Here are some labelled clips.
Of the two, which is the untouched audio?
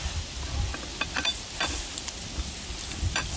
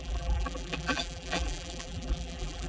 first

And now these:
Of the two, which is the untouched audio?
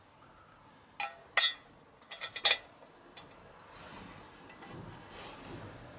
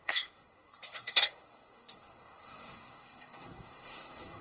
first